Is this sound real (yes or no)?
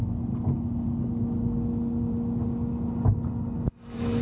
yes